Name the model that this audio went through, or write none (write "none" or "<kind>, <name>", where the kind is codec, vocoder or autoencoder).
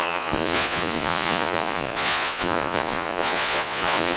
vocoder, Vocos